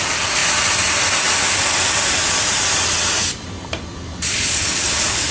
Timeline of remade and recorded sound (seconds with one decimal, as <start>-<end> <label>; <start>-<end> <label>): 0.0-4.3 recorded; 4.3-5.3 remade